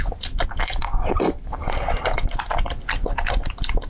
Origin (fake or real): real